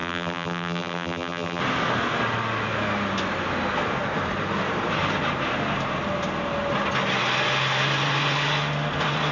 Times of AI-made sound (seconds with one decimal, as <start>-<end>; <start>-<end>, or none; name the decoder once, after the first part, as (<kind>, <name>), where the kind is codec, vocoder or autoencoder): 0.0-1.6 (vocoder, BigVGAN v2)